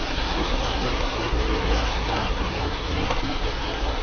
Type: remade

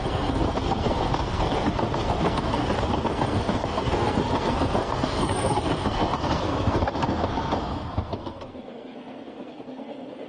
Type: remade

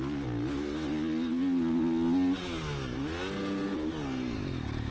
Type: recorded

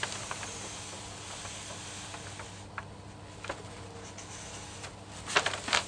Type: recorded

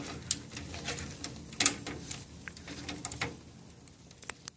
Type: recorded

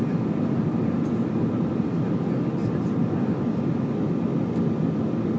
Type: recorded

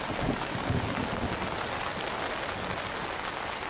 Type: recorded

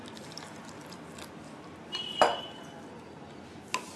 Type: recorded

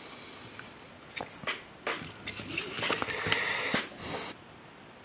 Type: recorded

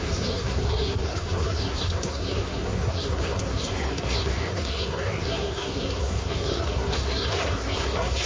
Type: remade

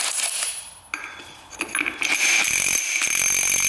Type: recorded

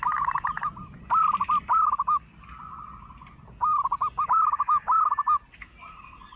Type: recorded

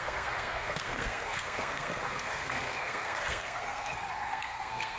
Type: remade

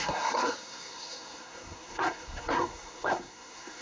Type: remade